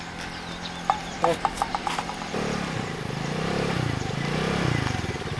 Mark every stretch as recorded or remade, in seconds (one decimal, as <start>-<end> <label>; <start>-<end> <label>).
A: 0.0-1.0 recorded; 1.0-4.2 remade; 4.2-5.4 recorded